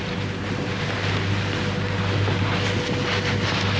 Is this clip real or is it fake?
real